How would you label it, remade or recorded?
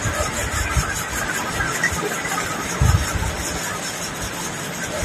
recorded